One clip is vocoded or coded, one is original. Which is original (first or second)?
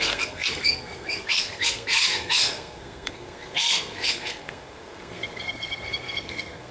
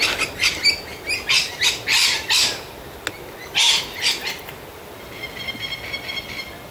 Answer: second